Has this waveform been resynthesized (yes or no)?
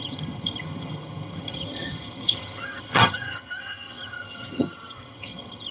yes